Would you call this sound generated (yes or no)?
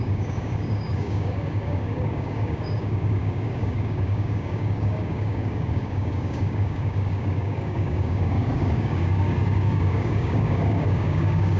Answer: yes